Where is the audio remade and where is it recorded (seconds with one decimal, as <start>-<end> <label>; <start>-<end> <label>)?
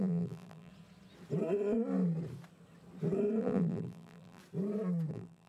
0.0-0.7 remade; 0.7-3.4 recorded; 3.4-4.4 remade; 4.4-5.1 recorded; 5.1-5.5 remade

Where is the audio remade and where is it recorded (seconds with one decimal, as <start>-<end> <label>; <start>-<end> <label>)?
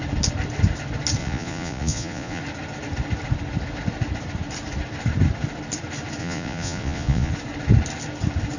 0.0-1.2 recorded; 1.2-2.4 remade; 2.4-6.2 recorded; 6.2-7.3 remade; 7.3-8.6 recorded